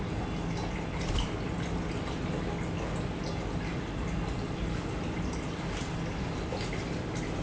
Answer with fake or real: real